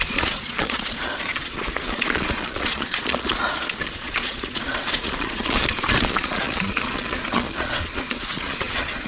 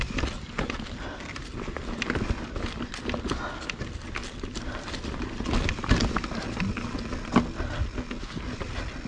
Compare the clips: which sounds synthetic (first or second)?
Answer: first